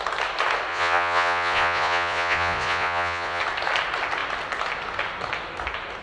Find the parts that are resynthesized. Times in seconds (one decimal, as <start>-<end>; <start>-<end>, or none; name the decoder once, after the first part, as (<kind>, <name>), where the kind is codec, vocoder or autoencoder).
0.7-3.4 (vocoder, Vocos)